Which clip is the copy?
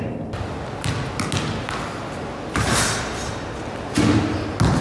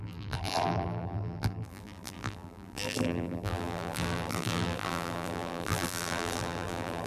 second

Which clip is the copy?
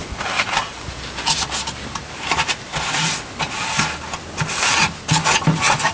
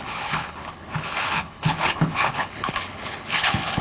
second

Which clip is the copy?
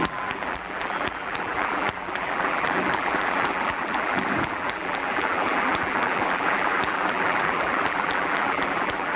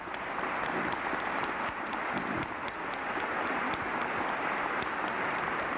first